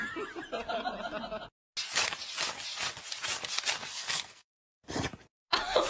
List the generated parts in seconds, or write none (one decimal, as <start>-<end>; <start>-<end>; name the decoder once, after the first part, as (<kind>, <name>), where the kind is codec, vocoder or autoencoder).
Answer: 3.9-4.7 (codec, SNAC)